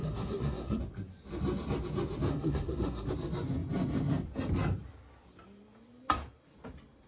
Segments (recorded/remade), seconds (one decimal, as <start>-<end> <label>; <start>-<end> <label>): 0.0-0.8 remade; 0.8-2.3 recorded; 2.3-3.1 remade; 3.1-7.1 recorded